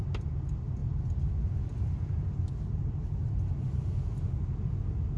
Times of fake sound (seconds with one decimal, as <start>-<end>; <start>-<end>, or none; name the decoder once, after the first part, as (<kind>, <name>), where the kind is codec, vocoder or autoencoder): 3.2-3.9 (vocoder, BigVGAN v2)